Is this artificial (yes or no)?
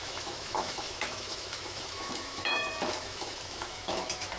yes